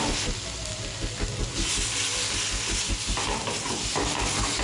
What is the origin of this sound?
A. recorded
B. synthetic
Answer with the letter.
A